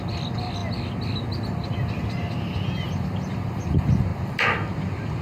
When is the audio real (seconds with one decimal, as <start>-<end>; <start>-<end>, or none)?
0.6-3.5; 4.1-4.7